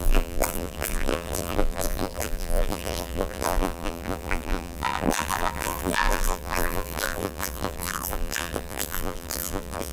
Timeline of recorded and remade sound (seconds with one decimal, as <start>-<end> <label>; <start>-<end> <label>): 0.0-9.9 remade